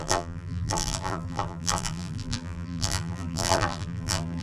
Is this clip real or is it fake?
fake